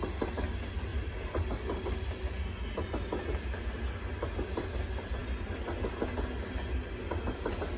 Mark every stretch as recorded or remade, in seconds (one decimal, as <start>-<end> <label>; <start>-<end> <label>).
0.0-0.9 recorded; 0.9-2.3 remade; 2.3-7.8 recorded